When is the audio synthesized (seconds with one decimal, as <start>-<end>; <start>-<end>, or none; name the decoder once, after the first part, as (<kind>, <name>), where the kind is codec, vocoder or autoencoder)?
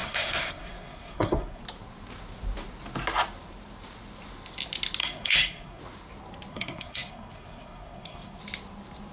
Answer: 0.0-1.6 (codec, SNAC); 5.0-5.8; 6.5-8.4